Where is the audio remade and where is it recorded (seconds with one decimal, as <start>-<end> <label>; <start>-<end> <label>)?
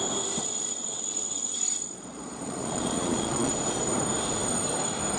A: 0.0-0.4 recorded; 0.4-3.5 remade; 3.5-5.2 recorded